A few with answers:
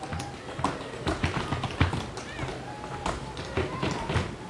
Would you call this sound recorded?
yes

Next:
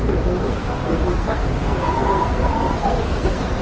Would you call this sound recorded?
no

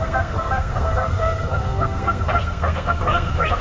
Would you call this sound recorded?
no